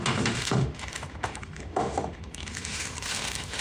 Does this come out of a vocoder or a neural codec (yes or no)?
yes